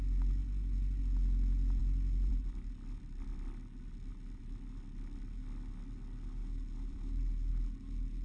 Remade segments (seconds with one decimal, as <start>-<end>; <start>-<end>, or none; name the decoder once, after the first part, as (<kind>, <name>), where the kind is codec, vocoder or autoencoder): 0.4-1.0 (vocoder, BigVGAN v2); 1.8-2.3; 6.4-7.5